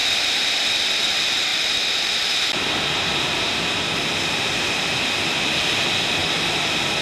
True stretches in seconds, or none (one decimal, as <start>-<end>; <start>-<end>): 0.7-1.5; 5.7-7.0